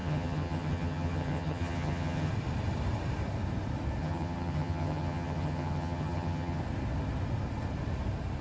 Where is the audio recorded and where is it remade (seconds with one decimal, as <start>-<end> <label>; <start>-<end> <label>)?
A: 0.0-2.3 remade; 2.3-4.0 recorded; 4.0-6.6 remade; 6.6-8.4 recorded